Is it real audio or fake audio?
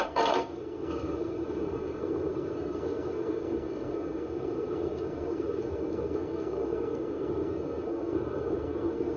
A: fake